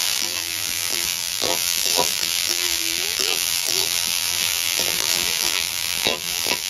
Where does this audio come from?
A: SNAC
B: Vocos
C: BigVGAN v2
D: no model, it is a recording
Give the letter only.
C